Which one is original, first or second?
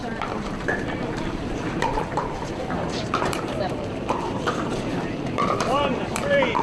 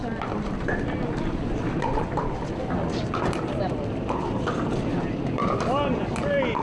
second